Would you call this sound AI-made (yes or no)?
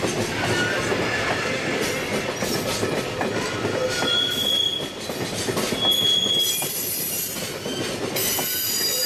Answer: no